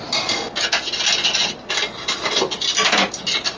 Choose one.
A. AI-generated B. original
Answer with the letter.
B